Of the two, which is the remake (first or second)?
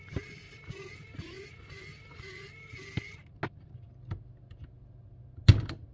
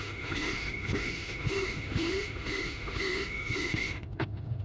second